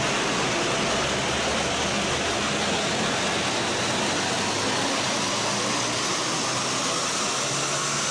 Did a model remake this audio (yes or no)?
no